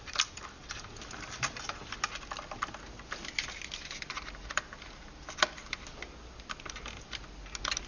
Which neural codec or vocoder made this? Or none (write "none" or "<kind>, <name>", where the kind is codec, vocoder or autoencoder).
none